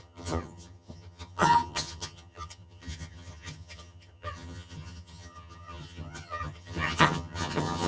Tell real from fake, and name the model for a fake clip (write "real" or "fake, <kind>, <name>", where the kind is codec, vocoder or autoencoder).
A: fake, vocoder, HiFi-GAN